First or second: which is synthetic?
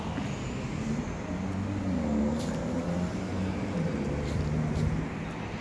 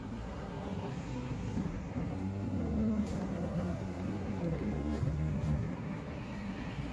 second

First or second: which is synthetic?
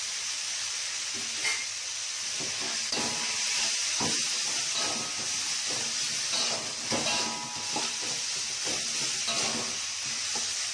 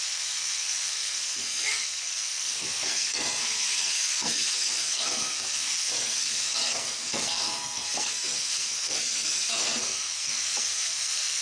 second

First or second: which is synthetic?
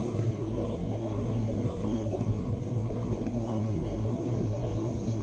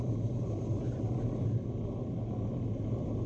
first